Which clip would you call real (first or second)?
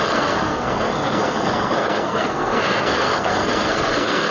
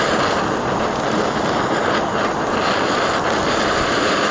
second